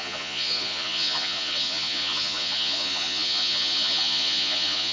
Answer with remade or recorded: remade